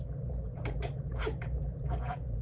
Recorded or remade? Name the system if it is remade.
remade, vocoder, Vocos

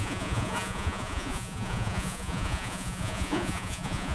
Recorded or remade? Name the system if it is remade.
remade, vocoder, Vocos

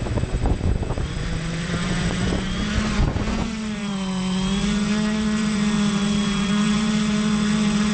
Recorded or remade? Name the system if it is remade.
remade, vocoder, Vocos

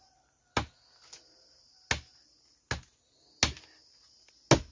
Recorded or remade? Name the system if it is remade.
recorded